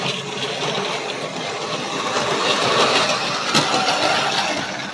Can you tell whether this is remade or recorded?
recorded